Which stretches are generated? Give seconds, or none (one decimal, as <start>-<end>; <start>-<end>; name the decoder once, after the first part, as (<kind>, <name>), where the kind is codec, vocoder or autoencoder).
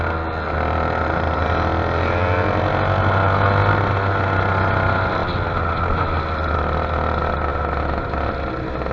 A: none